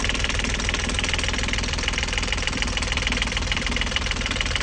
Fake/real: fake